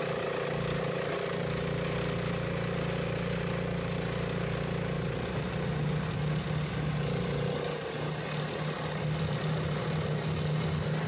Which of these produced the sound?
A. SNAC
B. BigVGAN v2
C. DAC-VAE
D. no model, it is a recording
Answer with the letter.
D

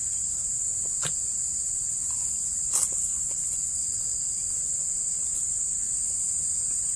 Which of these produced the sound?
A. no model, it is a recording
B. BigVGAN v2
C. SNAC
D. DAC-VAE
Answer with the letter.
A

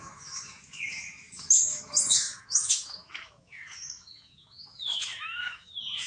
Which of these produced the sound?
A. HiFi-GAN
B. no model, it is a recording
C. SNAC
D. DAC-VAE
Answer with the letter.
D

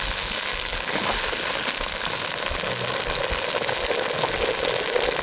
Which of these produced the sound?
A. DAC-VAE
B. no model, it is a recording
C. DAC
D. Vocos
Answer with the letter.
B